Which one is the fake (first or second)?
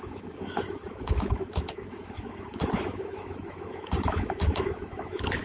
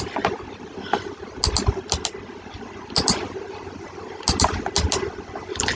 first